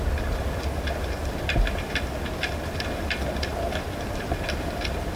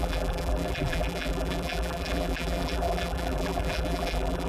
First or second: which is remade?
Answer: second